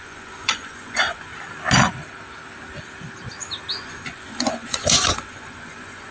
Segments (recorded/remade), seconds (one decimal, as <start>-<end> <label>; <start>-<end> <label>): 0.0-1.3 remade; 1.3-3.7 recorded; 3.7-6.1 remade